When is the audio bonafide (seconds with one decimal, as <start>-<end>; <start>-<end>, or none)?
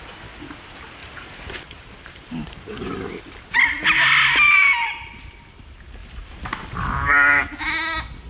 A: 0.0-1.0; 3.2-6.0; 7.4-8.3